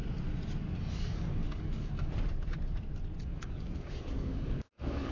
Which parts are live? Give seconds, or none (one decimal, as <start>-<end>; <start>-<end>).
0.0-0.9; 2.1-3.2